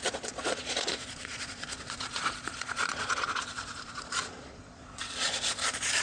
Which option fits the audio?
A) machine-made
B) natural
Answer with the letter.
A